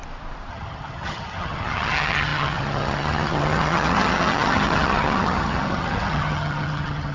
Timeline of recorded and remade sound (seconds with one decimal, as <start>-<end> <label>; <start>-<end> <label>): 0.0-0.5 recorded; 0.5-7.1 remade